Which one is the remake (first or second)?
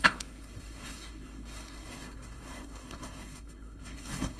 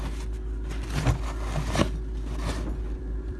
first